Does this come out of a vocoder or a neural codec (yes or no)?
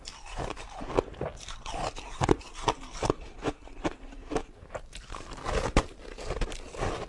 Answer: no